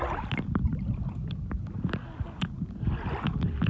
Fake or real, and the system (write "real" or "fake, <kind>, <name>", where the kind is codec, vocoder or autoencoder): real